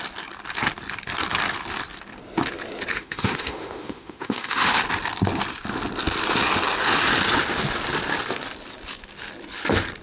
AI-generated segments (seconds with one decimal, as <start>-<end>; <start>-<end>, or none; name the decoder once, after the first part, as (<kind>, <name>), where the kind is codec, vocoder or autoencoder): 2.9-4.8 (autoencoder, DAC-VAE)